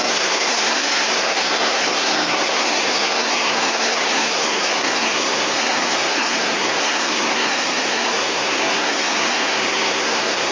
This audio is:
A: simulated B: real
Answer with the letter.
A